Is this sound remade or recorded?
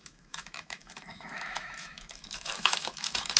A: remade